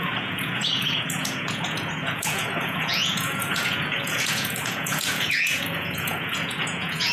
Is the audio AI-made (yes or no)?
yes